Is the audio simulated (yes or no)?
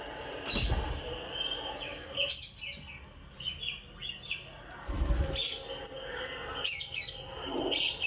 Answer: no